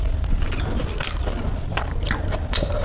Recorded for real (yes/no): yes